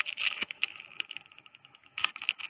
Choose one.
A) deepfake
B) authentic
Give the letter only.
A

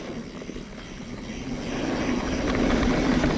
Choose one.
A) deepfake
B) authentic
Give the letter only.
B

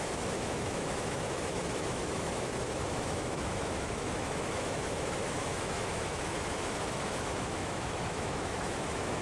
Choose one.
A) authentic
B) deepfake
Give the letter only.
B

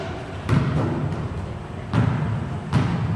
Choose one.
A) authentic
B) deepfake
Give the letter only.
A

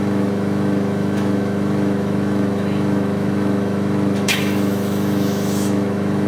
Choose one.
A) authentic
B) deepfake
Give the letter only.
B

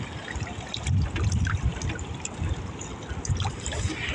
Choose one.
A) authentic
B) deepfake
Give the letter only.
A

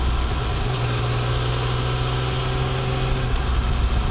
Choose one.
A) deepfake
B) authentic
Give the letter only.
B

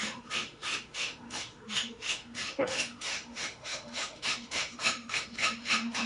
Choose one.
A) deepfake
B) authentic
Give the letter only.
A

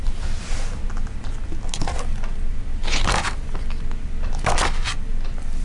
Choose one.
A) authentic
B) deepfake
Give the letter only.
A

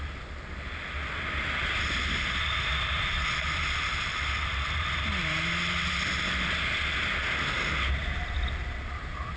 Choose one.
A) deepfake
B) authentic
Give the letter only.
B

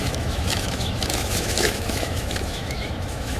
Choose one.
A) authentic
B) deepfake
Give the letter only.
B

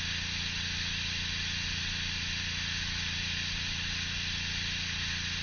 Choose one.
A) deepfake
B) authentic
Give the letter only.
B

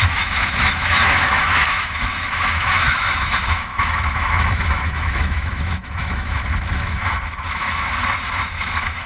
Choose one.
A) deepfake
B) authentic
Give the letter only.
A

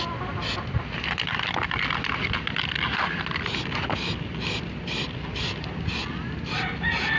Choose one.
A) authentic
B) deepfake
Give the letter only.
A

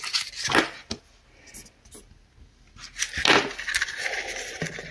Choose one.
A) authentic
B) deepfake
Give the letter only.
A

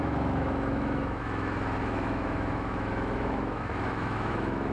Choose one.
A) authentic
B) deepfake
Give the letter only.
B